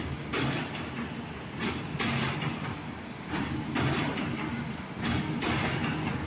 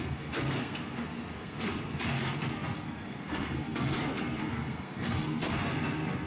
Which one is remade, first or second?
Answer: second